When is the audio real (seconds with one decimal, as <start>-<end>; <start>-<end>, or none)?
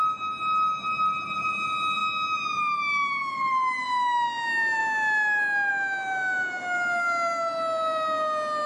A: 0.0-8.7